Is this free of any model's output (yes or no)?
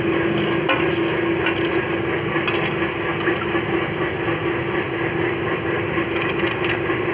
yes